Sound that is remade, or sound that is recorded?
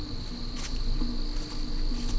recorded